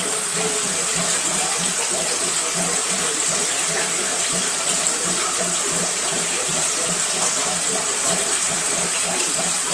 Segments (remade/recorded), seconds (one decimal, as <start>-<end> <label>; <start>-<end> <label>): 0.0-4.1 recorded; 4.1-7.0 remade; 7.0-8.0 recorded; 8.0-9.7 remade